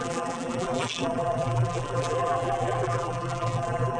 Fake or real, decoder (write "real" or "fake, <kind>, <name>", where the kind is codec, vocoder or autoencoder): fake, vocoder, BigVGAN v2